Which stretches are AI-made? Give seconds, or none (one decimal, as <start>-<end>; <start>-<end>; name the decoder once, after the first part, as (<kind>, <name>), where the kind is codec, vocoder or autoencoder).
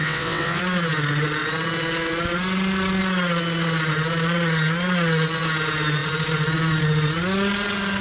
0.0-0.6 (vocoder, WaveNeXt)